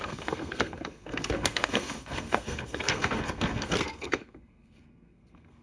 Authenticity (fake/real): fake